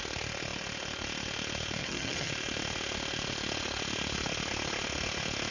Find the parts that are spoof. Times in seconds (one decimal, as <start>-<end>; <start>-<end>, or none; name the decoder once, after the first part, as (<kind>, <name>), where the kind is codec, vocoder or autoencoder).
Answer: 1.8-2.3 (vocoder, HiFi-GAN)